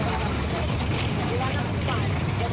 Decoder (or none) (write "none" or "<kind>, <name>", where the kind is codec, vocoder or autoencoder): vocoder, BigVGAN v2